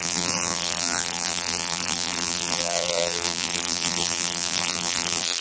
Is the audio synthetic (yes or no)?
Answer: yes